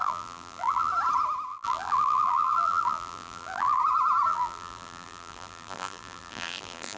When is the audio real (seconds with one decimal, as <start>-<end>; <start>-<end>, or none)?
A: 0.9-1.5; 3.8-4.3